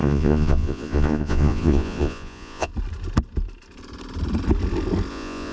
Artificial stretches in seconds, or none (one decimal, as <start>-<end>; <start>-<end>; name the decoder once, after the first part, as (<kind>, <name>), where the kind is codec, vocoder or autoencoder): 0.0-2.7 (vocoder, Vocos); 5.1-5.5